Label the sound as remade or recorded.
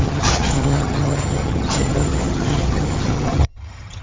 remade